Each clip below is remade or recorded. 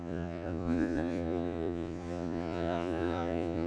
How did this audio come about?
remade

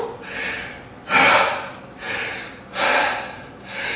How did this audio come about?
recorded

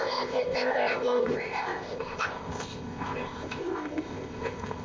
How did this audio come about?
remade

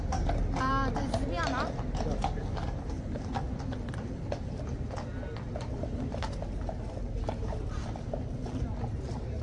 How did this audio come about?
recorded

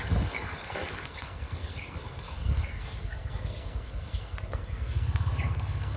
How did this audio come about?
remade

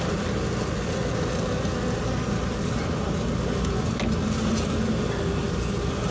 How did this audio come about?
recorded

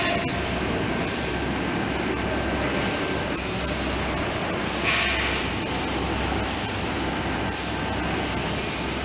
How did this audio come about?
recorded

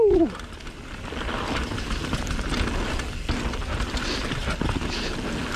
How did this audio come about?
recorded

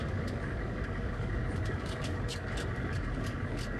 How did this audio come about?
remade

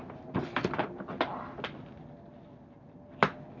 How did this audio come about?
recorded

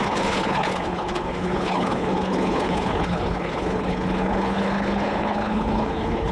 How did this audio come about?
remade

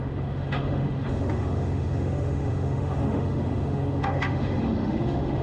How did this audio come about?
remade